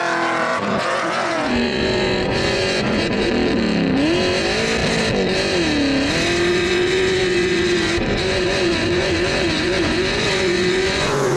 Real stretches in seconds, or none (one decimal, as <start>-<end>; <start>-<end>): 0.0-0.5; 3.3-6.5